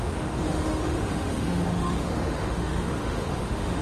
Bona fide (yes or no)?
no